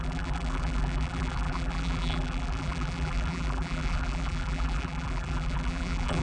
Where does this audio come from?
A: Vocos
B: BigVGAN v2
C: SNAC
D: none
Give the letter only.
B